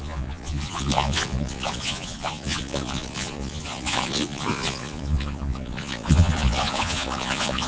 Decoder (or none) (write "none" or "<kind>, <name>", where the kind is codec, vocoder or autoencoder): vocoder, Vocos